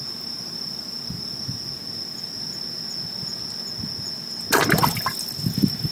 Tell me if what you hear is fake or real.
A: real